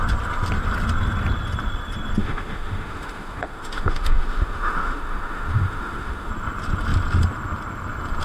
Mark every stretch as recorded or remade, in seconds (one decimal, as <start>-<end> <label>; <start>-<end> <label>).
0.0-2.2 recorded; 2.2-6.3 remade; 6.3-8.2 recorded